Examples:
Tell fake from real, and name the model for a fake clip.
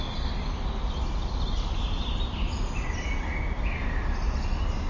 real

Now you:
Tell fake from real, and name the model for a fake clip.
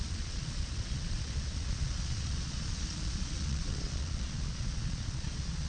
fake, vocoder, Vocos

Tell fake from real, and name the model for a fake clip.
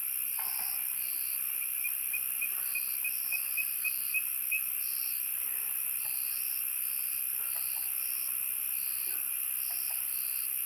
real